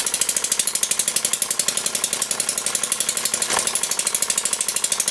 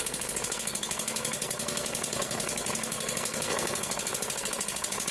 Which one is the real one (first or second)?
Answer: first